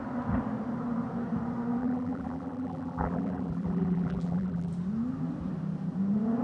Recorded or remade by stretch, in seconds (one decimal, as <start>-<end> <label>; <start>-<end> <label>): 0.0-1.8 recorded; 1.8-4.7 remade; 4.7-6.4 recorded